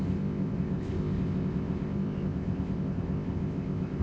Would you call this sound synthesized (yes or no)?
yes